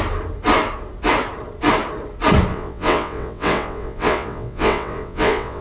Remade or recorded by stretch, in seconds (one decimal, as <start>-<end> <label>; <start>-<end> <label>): 0.0-2.5 recorded; 2.5-5.6 remade